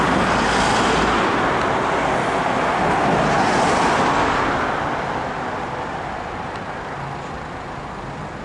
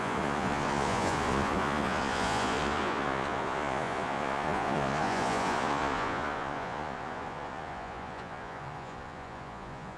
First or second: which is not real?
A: second